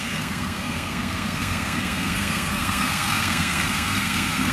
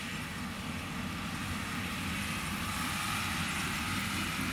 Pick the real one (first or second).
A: second